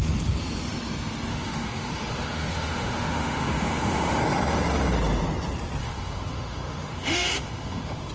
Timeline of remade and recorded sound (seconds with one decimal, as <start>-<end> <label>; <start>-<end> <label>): 0.0-1.3 recorded; 1.3-4.2 remade; 4.2-5.8 recorded; 5.8-8.1 remade